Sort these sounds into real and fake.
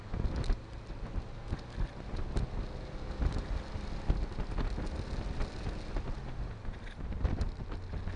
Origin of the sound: real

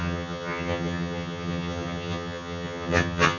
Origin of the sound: fake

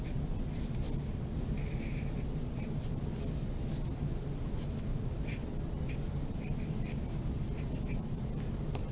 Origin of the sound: real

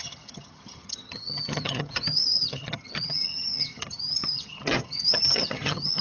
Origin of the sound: fake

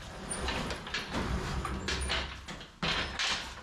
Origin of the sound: real